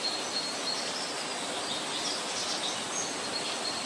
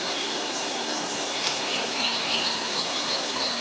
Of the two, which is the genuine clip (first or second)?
first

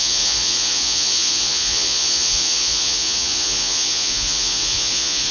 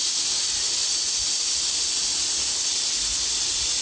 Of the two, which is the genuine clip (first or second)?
second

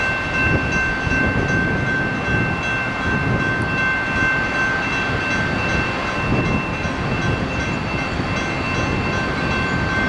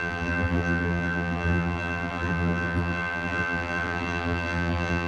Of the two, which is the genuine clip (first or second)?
first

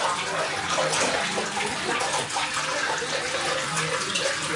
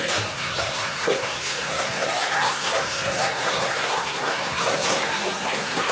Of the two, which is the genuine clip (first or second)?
first